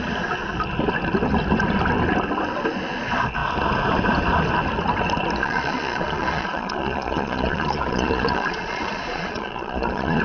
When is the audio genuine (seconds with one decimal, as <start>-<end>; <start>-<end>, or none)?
0.0-5.4